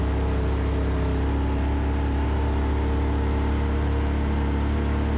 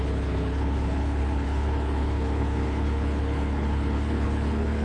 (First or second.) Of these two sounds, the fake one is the second